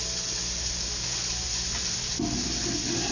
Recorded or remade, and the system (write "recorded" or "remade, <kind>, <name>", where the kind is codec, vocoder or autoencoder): recorded